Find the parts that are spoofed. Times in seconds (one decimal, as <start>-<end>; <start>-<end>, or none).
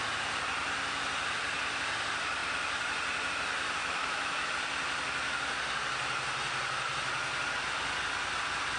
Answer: 3.8-4.5